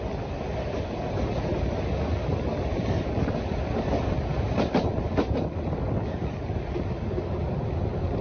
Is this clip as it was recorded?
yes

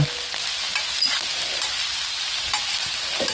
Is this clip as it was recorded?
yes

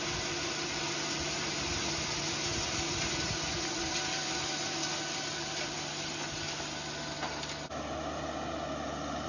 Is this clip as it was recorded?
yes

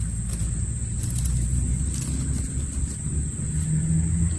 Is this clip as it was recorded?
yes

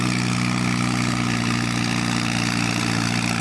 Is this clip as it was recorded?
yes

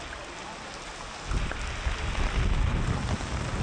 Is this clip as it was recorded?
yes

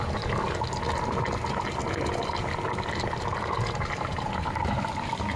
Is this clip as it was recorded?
yes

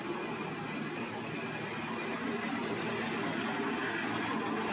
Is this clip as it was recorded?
yes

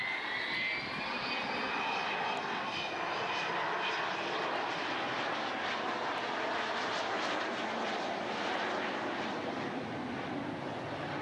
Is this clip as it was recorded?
yes